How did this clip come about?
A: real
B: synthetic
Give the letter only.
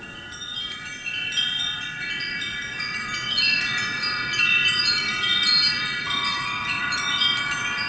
B